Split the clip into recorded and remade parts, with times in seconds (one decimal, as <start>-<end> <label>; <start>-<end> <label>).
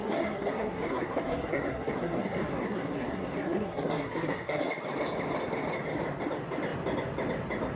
0.0-4.7 remade; 4.7-7.8 recorded